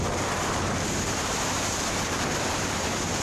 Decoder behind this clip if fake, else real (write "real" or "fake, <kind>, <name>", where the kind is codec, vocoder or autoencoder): fake, vocoder, BigVGAN v2